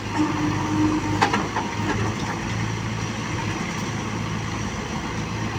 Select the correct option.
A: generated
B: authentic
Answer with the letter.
B